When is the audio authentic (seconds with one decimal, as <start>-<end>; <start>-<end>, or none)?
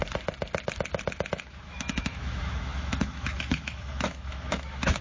0.0-1.1